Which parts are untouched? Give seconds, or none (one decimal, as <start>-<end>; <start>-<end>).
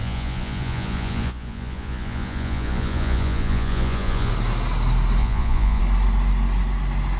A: 4.3-5.2; 5.8-7.2